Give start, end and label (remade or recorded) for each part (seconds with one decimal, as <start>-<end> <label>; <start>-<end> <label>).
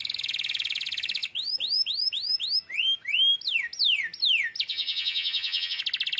0.0-4.7 recorded; 4.7-5.8 remade; 5.8-6.2 recorded